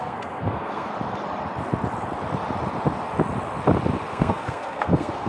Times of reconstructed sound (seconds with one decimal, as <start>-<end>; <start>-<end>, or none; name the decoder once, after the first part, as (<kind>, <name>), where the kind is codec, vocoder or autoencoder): 0.0-0.9 (codec, SNAC); 4.1-5.3